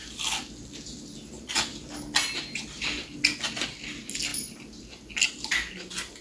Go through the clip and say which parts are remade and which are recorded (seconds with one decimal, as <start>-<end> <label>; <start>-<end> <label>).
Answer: 0.0-6.2 recorded